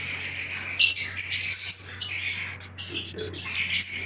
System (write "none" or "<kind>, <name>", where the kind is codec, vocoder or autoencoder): none